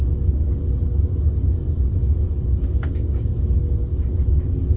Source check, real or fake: real